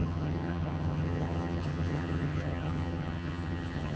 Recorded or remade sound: remade